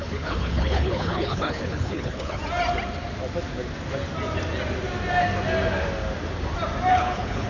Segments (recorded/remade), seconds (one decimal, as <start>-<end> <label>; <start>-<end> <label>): 0.0-2.4 remade; 2.4-6.9 recorded; 6.9-7.5 remade